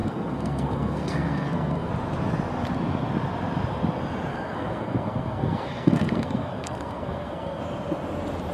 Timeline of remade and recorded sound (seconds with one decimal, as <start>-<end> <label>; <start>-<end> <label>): 0.0-1.9 remade; 1.9-4.3 recorded; 4.3-7.6 remade; 7.6-8.5 recorded